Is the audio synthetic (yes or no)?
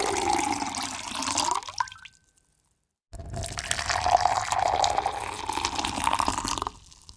no